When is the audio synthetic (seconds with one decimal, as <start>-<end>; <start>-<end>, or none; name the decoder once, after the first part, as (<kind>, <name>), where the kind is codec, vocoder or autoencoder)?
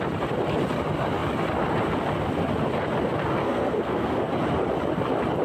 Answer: 3.4-4.3 (codec, SNAC)